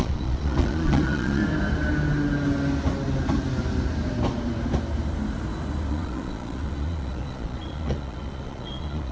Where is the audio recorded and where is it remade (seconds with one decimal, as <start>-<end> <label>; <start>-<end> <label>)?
0.0-1.4 remade; 1.4-5.9 recorded; 5.9-9.1 remade

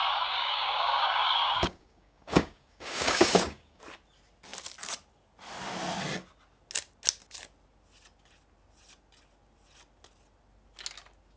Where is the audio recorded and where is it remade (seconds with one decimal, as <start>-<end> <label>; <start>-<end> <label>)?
0.0-3.8 remade; 3.8-11.4 recorded

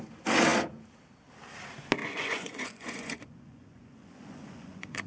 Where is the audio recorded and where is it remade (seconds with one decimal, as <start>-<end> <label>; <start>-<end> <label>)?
0.0-2.0 recorded; 2.0-5.1 remade

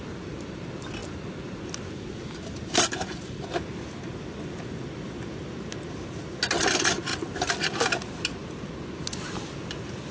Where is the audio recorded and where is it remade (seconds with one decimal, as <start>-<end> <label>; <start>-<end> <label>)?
0.0-10.1 recorded

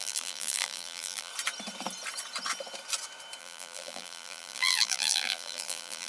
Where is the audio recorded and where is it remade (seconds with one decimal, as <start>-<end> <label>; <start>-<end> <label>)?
0.0-1.3 remade; 1.3-3.4 recorded; 3.4-6.1 remade

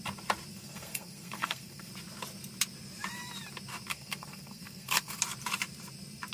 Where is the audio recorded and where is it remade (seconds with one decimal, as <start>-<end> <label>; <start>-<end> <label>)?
0.0-0.5 recorded; 0.5-1.9 remade; 1.9-3.9 recorded; 3.9-5.2 remade; 5.2-6.3 recorded

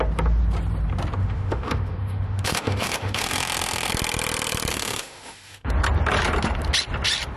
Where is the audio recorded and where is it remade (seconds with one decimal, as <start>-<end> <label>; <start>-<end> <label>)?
0.0-1.2 recorded; 1.2-3.9 remade; 3.9-4.7 recorded; 4.7-5.7 remade; 5.7-7.4 recorded